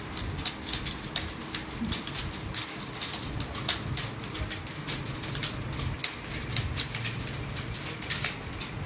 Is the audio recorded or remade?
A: recorded